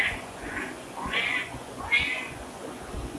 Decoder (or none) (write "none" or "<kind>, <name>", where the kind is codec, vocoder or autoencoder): vocoder, Vocos